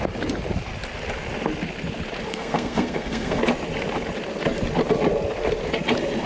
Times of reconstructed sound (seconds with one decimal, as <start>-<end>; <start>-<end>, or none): 2.3-3.4